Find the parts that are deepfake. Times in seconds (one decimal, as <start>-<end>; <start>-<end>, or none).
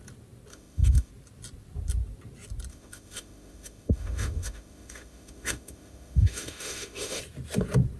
0.5-1.1; 2.7-7.2